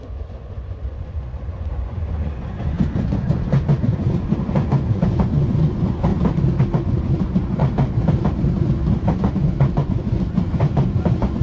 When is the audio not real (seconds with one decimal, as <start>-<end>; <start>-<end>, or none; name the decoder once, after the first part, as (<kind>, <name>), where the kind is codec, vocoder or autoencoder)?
0.0-6.1 (vocoder, Vocos); 6.6-7.6; 9.0-11.4